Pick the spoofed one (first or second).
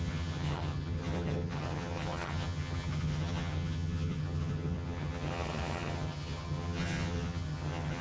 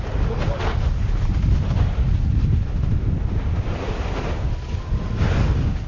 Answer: first